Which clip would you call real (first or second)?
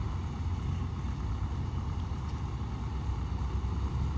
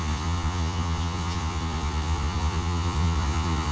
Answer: first